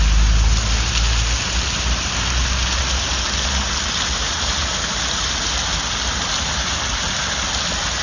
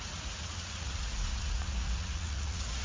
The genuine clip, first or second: first